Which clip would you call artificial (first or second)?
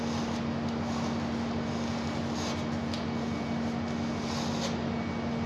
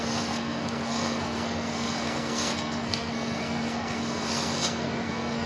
second